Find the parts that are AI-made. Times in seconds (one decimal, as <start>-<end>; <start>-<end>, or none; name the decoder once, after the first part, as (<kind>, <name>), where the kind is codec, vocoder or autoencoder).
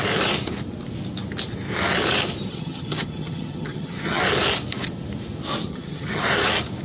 2.5-4.2 (vocoder, HiFi-GAN); 5.6-6.2